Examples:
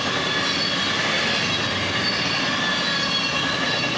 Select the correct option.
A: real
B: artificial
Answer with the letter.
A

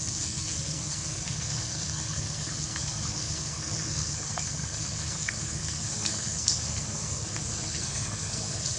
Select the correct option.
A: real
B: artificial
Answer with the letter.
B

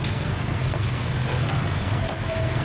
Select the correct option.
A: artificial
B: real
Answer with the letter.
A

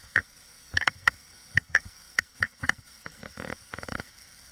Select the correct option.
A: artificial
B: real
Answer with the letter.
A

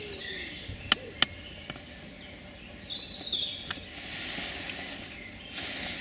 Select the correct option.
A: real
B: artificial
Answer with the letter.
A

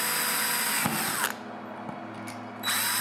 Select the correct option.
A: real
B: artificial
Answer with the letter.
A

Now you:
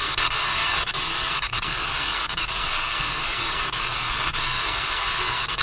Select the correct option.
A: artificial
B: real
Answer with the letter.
A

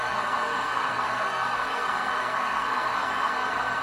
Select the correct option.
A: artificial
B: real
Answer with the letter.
A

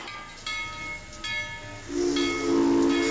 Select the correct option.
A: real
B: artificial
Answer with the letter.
A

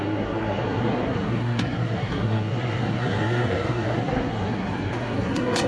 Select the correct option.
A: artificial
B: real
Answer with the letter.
A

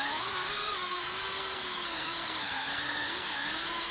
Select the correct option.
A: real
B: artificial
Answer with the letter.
B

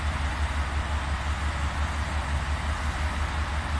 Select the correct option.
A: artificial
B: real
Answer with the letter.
B